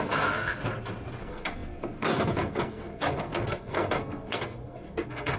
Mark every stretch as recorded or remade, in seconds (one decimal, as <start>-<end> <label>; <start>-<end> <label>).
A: 0.0-0.6 remade; 0.6-1.2 recorded; 1.2-5.4 remade